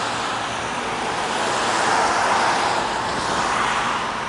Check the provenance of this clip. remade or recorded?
recorded